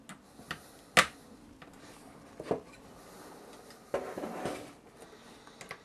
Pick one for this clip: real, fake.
real